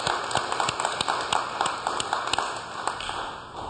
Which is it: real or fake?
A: real